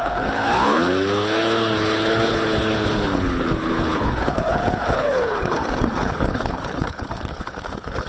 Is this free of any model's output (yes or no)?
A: no